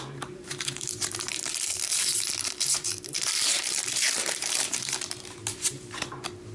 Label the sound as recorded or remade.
remade